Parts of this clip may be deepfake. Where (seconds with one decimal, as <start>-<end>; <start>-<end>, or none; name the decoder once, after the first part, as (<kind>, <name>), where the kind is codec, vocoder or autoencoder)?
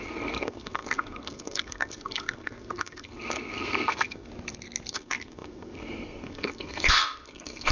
0.0-4.3 (codec, SNAC); 4.9-7.7